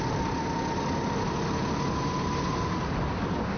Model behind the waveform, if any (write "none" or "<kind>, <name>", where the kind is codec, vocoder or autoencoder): none